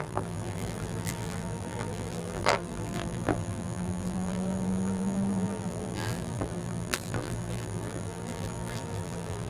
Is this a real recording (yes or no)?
no